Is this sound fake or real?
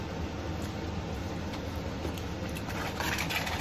real